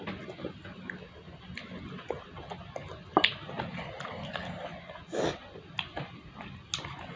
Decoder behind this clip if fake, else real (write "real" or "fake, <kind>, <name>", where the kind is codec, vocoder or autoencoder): real